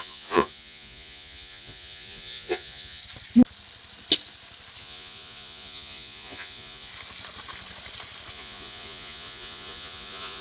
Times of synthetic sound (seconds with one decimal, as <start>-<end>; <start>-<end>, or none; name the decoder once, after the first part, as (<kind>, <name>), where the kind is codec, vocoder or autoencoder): 0.0-3.0 (vocoder, Vocos); 4.8-6.9; 8.3-10.4